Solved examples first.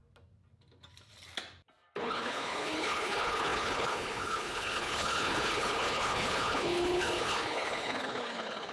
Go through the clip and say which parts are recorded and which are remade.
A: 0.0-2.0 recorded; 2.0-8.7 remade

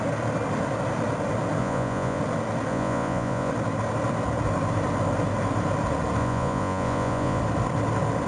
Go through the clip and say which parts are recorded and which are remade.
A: 0.0-1.6 recorded; 1.6-2.2 remade; 2.2-2.7 recorded; 2.7-3.5 remade; 3.5-6.2 recorded; 6.2-7.4 remade; 7.4-8.3 recorded

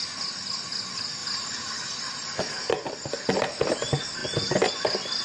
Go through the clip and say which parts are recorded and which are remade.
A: 0.0-5.2 recorded

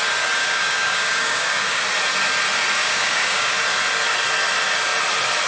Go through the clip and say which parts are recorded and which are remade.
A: 0.0-0.4 recorded; 0.4-1.8 remade; 1.8-2.8 recorded; 2.8-3.5 remade; 3.5-5.5 recorded

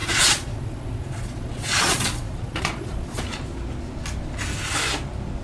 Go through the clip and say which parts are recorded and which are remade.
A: 0.0-3.2 remade; 3.2-5.4 recorded

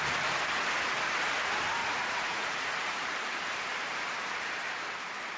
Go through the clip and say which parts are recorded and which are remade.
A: 0.0-1.8 recorded; 1.8-3.1 remade; 3.1-5.4 recorded

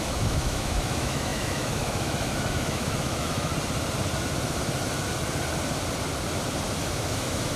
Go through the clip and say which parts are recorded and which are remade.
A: 0.0-3.5 remade; 3.5-6.8 recorded; 6.8-7.6 remade